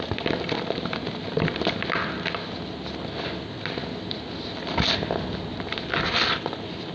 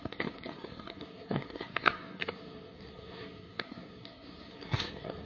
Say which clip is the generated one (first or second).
second